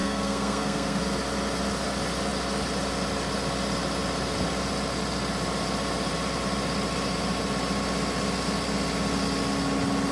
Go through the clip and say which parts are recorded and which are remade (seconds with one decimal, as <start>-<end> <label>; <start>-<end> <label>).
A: 0.0-1.0 remade; 1.0-10.1 recorded